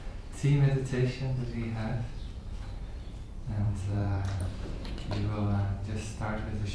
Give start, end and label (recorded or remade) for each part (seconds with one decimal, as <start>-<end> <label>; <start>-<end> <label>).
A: 0.0-2.2 recorded; 2.2-4.9 remade; 4.9-6.7 recorded